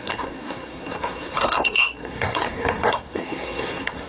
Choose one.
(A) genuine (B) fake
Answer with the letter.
B